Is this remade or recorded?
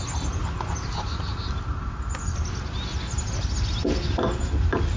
recorded